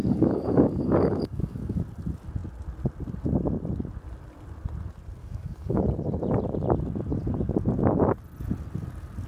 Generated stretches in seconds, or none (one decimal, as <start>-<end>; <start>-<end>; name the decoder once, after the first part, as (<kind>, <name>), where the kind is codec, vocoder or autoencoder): 0.0-1.8 (codec, DAC); 5.2-5.8

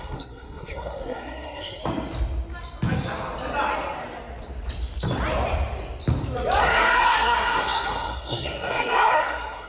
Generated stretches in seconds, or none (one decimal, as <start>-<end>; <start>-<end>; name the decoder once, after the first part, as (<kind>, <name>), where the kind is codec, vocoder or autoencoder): 0.0-1.8 (codec, SNAC); 6.6-9.7

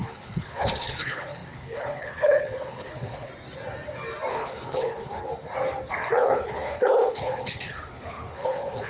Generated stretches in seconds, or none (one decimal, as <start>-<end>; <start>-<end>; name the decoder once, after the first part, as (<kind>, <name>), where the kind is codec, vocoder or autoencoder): 0.0-3.3 (codec, HILCodec); 4.3-5.2; 5.9-8.9

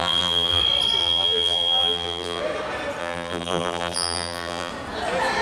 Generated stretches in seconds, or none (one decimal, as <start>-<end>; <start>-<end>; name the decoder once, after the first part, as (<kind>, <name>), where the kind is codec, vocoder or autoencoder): 0.0-0.6 (vocoder, BigVGAN v2); 1.0-2.4; 3.0-4.7